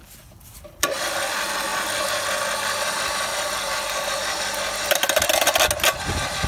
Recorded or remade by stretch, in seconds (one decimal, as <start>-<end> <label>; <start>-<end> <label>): 0.0-6.5 recorded

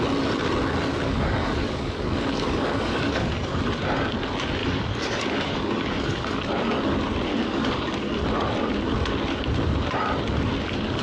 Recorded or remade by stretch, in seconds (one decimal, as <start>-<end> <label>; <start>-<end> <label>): 0.0-0.9 recorded; 0.9-3.6 remade; 3.6-4.6 recorded; 4.6-6.4 remade; 6.4-7.3 recorded; 7.3-8.2 remade; 8.2-11.0 recorded

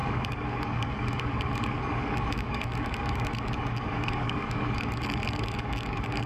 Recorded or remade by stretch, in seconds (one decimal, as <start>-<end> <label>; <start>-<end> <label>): 0.0-6.3 remade

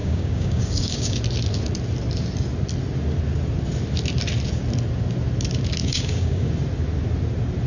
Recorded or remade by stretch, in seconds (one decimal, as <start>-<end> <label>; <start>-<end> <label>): 0.0-1.2 remade; 1.2-5.8 recorded; 5.8-6.5 remade; 6.5-7.7 recorded

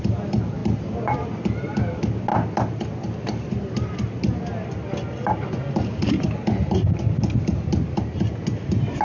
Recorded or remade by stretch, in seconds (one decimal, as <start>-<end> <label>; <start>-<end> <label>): 0.0-9.0 recorded